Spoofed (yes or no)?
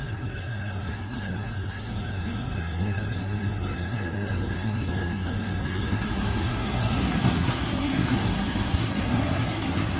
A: yes